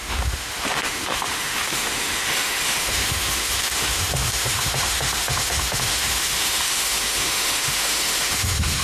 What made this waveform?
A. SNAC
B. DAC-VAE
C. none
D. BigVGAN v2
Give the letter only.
B